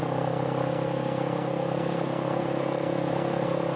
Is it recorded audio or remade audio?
remade